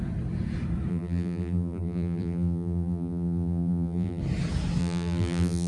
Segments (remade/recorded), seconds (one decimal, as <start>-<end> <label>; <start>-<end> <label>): 0.0-0.9 recorded; 0.9-4.2 remade; 4.2-4.8 recorded; 4.8-5.7 remade